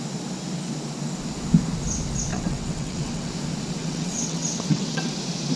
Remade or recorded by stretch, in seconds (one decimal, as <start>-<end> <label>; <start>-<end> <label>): 0.0-2.3 recorded; 2.3-3.3 remade; 3.3-3.8 recorded; 3.8-5.1 remade; 5.1-5.6 recorded